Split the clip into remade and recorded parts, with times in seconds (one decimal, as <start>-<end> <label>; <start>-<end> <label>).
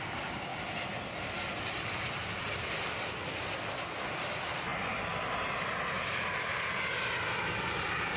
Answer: 0.0-8.2 recorded